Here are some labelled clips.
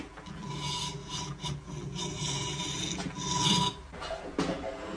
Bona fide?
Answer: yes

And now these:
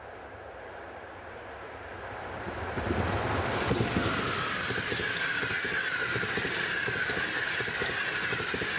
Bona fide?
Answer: yes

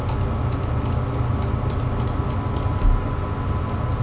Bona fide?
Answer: yes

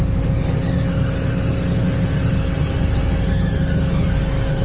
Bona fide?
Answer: yes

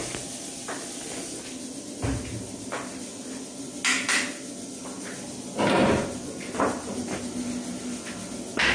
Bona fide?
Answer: yes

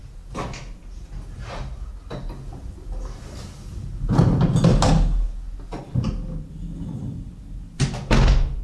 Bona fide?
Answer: yes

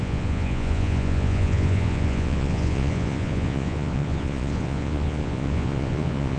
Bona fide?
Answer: no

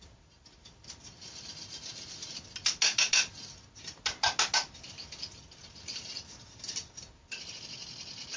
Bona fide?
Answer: yes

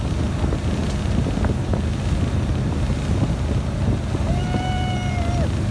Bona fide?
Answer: yes